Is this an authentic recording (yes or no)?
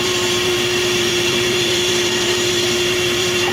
no